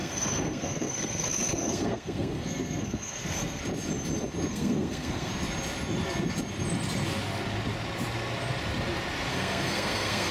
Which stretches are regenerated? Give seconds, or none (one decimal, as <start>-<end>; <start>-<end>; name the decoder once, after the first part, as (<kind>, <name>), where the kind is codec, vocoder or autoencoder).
0.0-3.6 (codec, SNAC); 4.5-5.3; 9.3-10.3